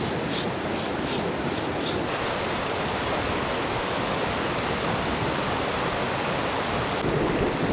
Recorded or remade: recorded